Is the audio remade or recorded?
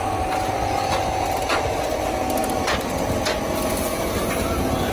recorded